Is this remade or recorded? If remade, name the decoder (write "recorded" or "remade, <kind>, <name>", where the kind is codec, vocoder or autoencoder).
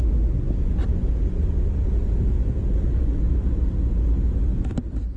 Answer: recorded